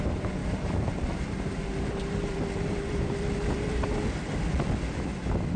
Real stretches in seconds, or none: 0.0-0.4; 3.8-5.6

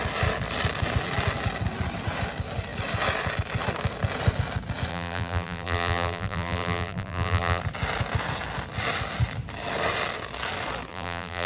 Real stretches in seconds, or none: 0.0-4.9; 7.6-10.9

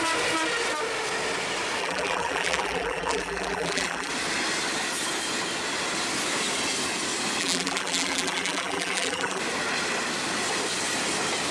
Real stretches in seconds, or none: 0.0-1.8; 4.1-7.4; 9.4-11.5

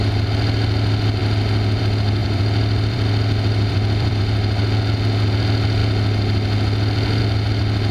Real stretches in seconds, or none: 0.0-2.2; 4.2-7.9